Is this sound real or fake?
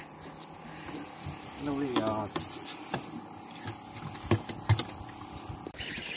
real